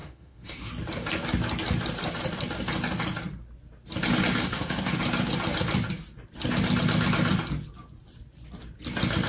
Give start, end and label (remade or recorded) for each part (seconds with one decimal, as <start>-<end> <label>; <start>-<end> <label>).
0.0-0.7 remade; 0.7-4.4 recorded; 4.4-5.0 remade; 5.0-9.3 recorded